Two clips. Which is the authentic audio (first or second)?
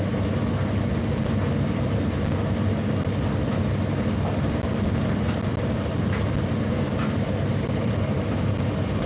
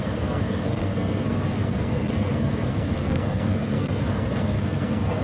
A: first